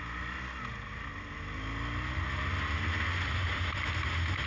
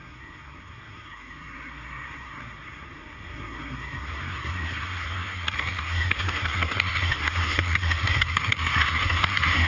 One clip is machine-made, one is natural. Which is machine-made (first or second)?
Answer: second